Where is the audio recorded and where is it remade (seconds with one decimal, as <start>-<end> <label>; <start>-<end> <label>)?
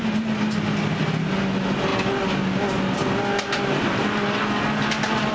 0.0-5.3 recorded